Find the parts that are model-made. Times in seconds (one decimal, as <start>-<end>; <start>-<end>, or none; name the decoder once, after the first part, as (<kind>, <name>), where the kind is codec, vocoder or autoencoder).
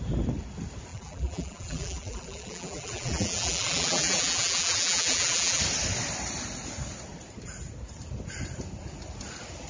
0.9-5.6 (vocoder, BigVGAN v2)